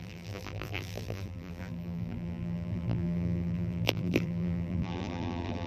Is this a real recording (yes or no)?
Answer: no